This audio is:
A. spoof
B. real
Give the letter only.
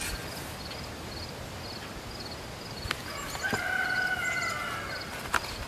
B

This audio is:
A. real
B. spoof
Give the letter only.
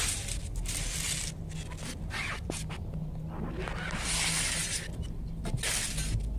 A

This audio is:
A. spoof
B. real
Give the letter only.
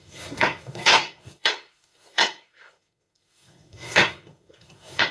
A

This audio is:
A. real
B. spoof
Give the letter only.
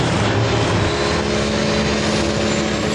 A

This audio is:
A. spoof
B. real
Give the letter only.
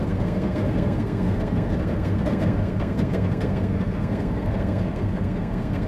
A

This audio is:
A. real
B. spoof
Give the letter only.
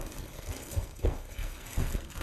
B